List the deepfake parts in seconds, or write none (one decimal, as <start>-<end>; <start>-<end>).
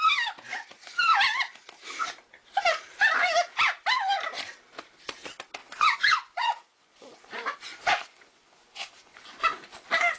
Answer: 5.6-9.7